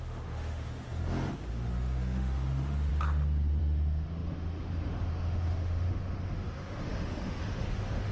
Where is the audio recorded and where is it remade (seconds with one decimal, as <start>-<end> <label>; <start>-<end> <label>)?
0.0-2.9 remade; 2.9-3.6 recorded; 3.6-8.1 remade